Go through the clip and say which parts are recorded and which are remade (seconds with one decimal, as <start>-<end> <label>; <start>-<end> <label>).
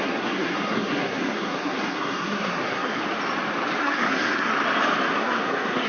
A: 0.0-3.0 remade; 3.0-3.8 recorded; 3.8-4.5 remade; 4.5-5.1 recorded; 5.1-5.9 remade